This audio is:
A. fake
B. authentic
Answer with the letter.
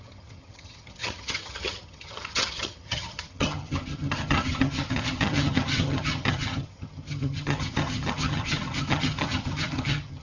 A